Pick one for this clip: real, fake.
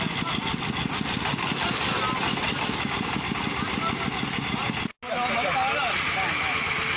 real